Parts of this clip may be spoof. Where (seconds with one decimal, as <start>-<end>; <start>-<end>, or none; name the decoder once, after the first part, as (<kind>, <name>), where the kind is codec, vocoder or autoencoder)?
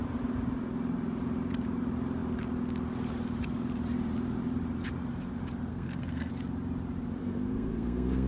5.7-6.3 (codec, SNAC); 7.2-8.3